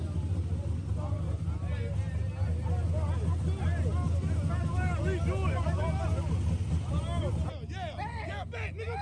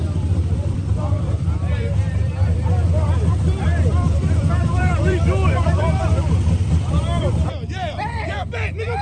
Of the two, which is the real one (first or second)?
first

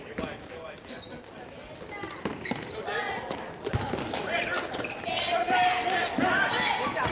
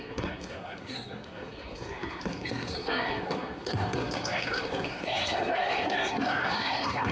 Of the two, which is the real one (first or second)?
first